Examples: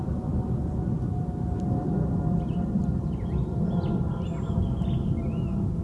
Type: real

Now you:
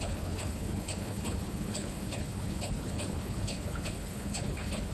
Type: fake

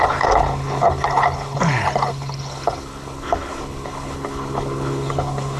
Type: fake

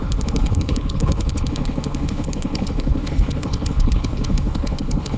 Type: fake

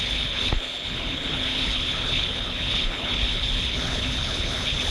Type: fake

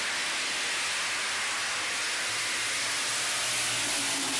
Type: real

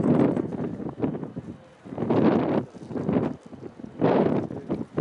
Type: real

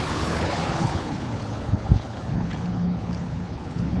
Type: fake